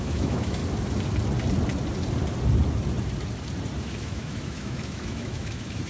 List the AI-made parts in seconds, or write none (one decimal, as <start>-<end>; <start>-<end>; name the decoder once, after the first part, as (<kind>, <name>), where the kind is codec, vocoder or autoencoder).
0.0-0.6 (autoencoder, DAC-VAE); 3.8-5.9